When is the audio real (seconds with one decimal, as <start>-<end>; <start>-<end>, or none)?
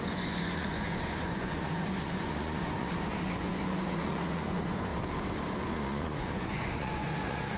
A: 4.9-5.7